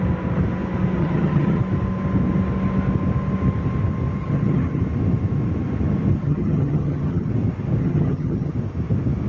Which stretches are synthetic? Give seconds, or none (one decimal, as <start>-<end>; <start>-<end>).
1.0-1.6; 4.2-4.8; 6.2-7.3; 7.8-8.5